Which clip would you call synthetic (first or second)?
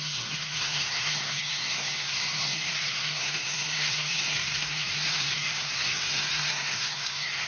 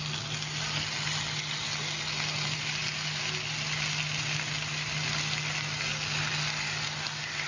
first